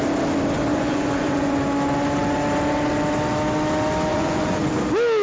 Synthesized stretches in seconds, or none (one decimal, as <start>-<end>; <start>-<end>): 0.7-1.6; 4.1-4.7